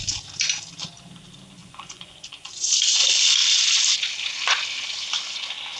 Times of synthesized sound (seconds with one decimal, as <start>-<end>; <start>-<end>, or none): 1.6-2.7